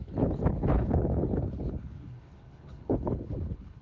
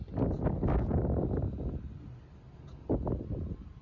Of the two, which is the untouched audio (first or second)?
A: second